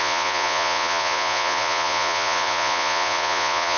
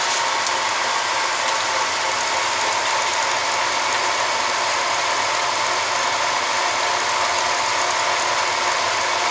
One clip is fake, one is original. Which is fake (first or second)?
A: first